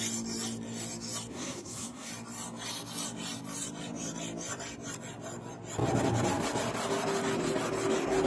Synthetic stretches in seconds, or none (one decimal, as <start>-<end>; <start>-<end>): 1.3-2.1